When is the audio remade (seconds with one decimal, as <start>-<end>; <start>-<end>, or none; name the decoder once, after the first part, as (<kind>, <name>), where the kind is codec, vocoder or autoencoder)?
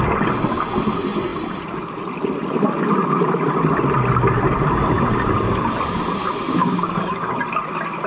6.6-7.4 (codec, DAC)